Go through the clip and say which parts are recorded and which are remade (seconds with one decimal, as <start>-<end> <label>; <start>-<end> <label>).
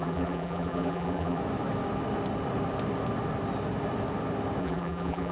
0.0-1.4 remade; 1.4-4.6 recorded; 4.6-5.3 remade